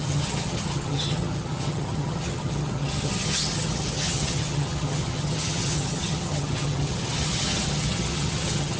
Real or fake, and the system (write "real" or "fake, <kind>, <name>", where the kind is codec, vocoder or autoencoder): fake, vocoder, HiFi-GAN